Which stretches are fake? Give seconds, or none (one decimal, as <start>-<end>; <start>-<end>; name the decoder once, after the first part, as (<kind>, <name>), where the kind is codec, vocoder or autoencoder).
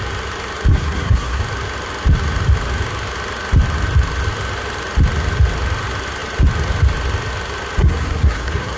0.7-1.4 (codec, SNAC); 7.8-8.8